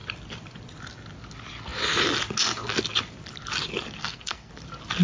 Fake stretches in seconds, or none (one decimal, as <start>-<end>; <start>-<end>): 4.0-4.5